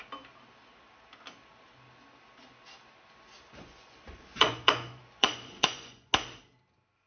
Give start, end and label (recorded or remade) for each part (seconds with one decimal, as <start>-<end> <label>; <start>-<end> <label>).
0.0-3.5 recorded; 3.5-6.1 remade; 6.1-7.1 recorded